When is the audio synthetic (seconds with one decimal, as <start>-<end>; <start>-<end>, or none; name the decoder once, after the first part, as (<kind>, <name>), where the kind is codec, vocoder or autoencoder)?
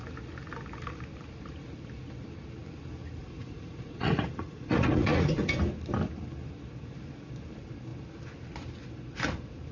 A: 3.2-5.5 (vocoder, Vocos)